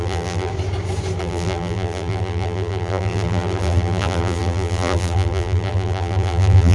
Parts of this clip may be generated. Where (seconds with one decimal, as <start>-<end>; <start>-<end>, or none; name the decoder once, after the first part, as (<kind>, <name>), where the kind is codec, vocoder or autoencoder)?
0.0-0.5 (vocoder, BigVGAN v2); 1.2-6.7